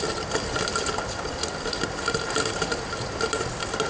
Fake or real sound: real